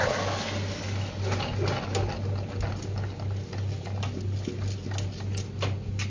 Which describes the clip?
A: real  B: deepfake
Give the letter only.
A